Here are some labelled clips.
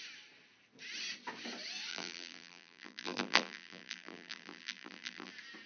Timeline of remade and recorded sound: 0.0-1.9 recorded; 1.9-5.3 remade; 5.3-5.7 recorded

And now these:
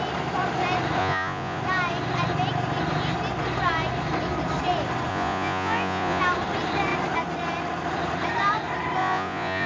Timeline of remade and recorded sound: 0.0-1.0 recorded; 1.0-1.6 remade; 1.6-5.1 recorded; 5.1-6.2 remade; 6.2-9.0 recorded; 9.0-9.7 remade

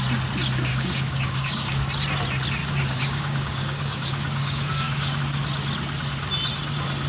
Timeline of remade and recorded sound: 0.0-0.7 recorded; 0.7-1.9 remade; 1.9-2.6 recorded; 2.6-5.2 remade; 5.2-7.1 recorded

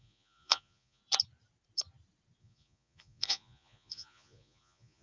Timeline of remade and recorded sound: 0.0-1.0 remade; 1.0-2.4 recorded; 2.4-5.0 remade

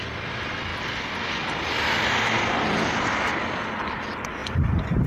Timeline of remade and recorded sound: 0.0-4.4 recorded; 4.4-5.1 remade